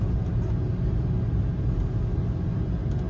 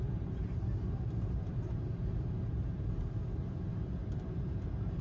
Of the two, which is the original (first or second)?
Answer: first